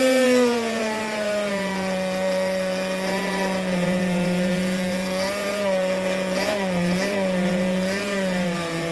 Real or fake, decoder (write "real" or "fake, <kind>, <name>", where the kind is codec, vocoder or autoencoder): fake, vocoder, Vocos